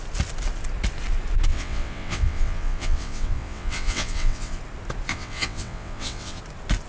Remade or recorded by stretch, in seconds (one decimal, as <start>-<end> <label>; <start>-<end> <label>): 0.0-1.5 recorded; 1.5-4.6 remade; 4.6-5.1 recorded; 5.1-6.4 remade; 6.4-6.9 recorded